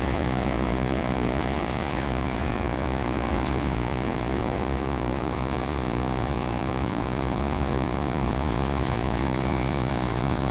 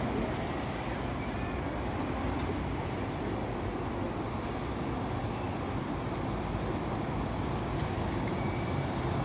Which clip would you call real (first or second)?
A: second